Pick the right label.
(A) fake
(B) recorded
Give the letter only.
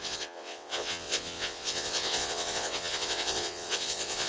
A